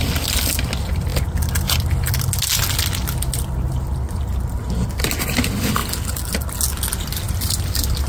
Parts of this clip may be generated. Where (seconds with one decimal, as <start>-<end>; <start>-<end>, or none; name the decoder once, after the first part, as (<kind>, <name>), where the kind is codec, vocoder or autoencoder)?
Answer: none